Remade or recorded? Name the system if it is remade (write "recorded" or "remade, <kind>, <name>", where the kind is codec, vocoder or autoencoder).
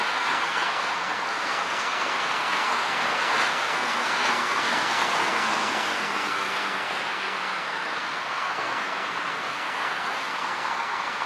remade, codec, SNAC